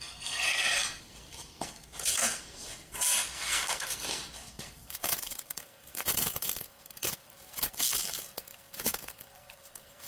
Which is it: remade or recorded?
remade